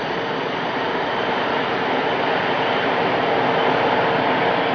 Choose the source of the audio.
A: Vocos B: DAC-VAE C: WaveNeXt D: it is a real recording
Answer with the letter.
D